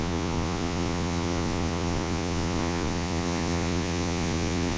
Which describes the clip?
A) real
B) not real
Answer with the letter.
B